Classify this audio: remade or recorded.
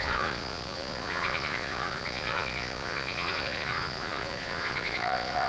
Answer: remade